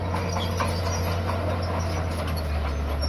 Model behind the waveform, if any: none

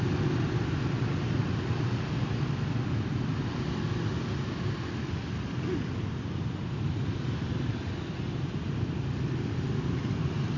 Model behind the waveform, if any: none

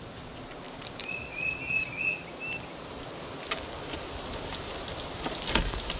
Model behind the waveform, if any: none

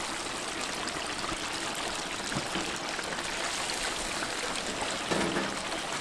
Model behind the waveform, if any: none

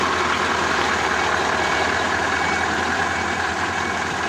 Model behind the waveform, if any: vocoder, BigVGAN v2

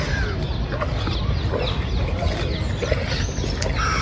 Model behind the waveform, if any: none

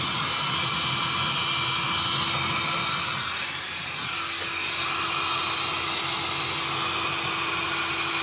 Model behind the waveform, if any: none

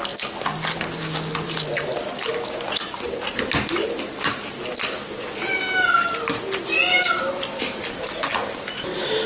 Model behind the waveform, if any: none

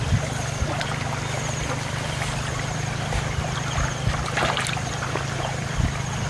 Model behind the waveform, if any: none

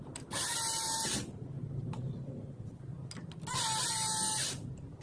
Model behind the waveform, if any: none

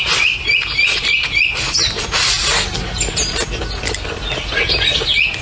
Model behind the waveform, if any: none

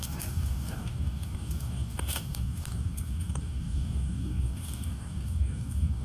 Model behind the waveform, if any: codec, DAC